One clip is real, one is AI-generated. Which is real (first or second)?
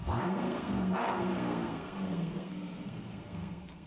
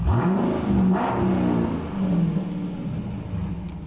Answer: second